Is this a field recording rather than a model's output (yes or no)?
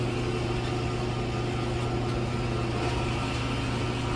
yes